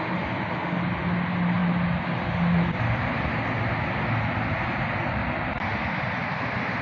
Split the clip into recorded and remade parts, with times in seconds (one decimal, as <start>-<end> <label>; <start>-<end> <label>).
0.0-5.2 recorded; 5.2-6.8 remade